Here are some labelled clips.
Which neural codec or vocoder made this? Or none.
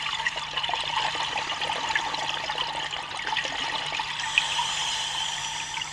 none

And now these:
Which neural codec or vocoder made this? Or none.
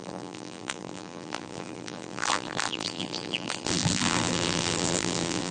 vocoder, BigVGAN v2